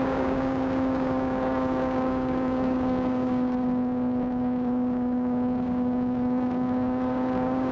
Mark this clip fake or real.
fake